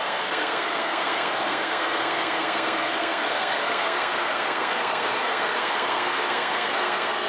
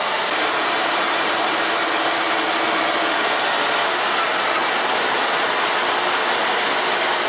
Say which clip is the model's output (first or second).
first